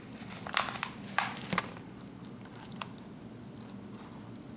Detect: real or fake real